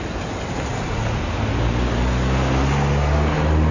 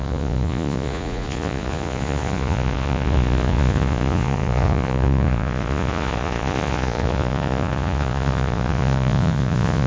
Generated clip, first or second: second